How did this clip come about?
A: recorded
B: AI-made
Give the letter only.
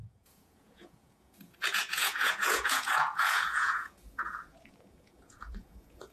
B